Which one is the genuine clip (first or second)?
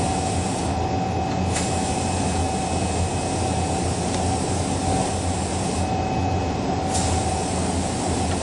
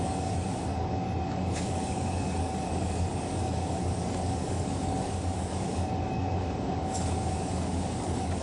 first